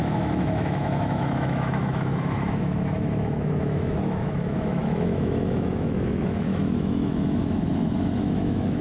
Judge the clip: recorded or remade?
remade